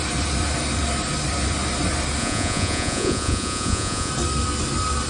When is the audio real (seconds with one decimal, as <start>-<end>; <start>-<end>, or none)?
0.0-2.2; 4.1-5.1